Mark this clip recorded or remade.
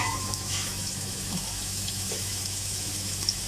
remade